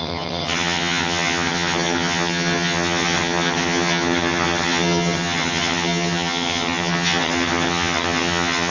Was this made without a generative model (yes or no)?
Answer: no